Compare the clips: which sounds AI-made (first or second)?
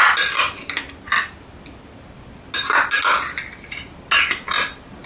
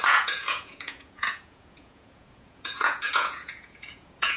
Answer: second